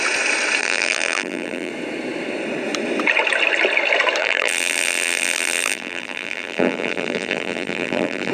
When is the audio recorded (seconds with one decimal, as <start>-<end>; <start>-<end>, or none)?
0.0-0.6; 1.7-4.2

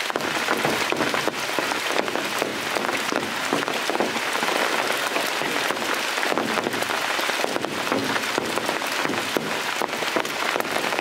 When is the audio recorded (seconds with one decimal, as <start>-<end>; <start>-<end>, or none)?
none

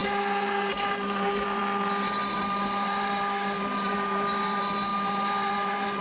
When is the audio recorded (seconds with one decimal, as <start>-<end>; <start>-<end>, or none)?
1.6-2.2

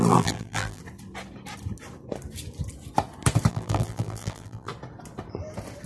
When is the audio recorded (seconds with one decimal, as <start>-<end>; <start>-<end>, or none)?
0.8-3.5; 4.7-5.9